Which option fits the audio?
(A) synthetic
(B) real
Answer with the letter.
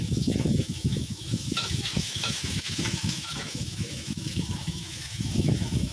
A